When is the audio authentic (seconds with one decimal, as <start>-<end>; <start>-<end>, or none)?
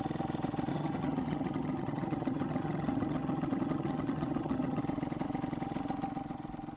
0.0-0.7; 4.8-6.8